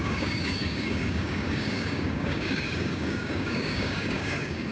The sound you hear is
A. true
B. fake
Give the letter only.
B